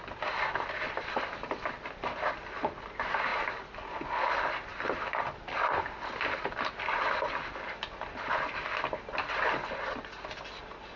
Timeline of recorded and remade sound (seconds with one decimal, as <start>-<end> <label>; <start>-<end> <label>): 0.0-11.0 recorded